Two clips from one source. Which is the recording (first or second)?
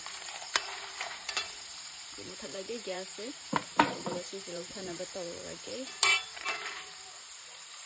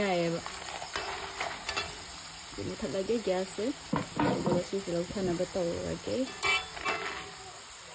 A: second